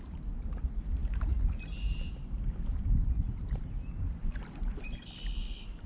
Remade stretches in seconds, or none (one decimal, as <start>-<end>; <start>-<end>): none